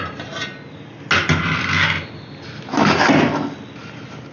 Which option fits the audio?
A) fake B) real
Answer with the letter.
B